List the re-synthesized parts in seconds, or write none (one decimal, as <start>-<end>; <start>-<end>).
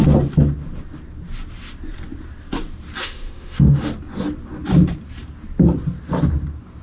3.0-3.9